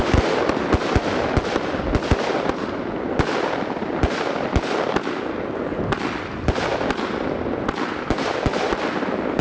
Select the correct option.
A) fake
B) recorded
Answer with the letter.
B